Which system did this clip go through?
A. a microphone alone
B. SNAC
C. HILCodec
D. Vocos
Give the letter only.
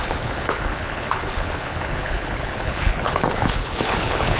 C